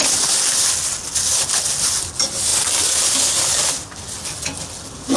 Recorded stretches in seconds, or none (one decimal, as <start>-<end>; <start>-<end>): 0.0-5.2